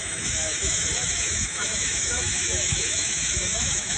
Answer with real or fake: fake